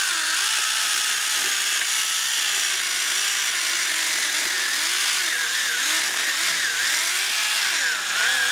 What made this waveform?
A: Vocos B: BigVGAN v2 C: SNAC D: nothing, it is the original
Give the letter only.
D